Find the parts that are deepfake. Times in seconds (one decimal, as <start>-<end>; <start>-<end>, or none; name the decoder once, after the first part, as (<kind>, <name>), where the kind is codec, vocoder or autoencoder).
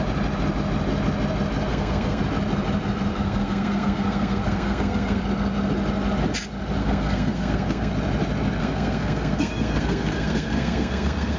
1.7-2.2 (codec, SNAC); 3.1-5.2; 6.8-7.9; 8.6-11.4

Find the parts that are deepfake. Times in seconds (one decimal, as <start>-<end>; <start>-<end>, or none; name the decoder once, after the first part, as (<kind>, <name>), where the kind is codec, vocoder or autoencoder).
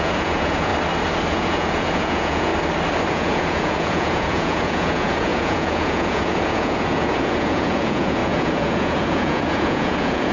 0.0-0.7 (vocoder, Vocos); 1.3-2.5; 3.1-10.3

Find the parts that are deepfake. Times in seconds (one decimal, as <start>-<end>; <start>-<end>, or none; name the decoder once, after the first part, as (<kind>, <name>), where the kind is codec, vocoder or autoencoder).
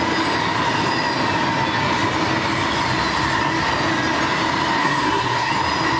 4.8-5.5 (codec, SNAC)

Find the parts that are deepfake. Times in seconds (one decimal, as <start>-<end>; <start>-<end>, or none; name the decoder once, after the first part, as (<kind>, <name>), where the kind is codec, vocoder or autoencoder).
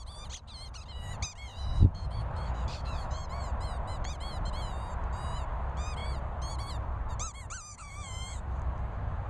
1.5-3.2 (autoencoder, DAC-VAE); 7.7-8.6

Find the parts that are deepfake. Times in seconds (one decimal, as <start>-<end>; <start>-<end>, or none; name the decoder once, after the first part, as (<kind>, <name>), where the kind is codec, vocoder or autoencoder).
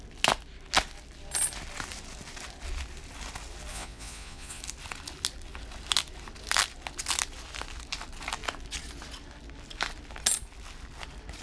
3.7-4.6 (vocoder, Vocos)